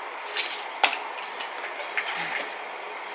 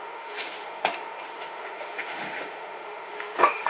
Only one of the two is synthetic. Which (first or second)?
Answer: second